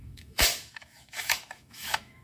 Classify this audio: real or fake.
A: fake